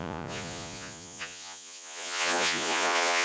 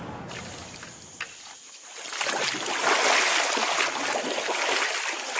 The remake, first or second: first